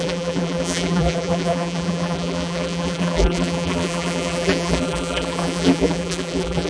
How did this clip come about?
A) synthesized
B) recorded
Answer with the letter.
A